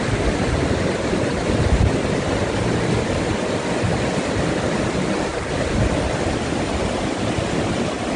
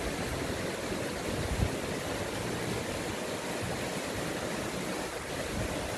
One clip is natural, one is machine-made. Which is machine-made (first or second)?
first